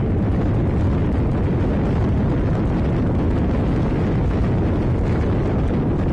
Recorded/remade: recorded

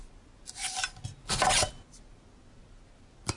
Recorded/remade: recorded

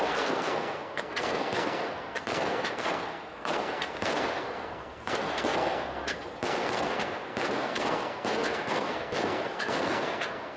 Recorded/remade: remade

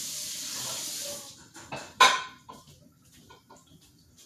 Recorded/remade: recorded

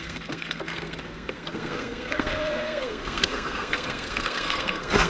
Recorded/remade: remade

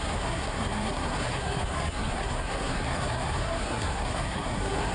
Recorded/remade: remade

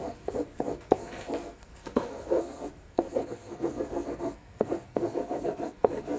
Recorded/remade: remade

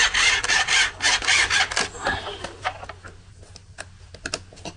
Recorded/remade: recorded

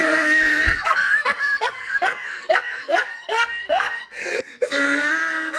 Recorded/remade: remade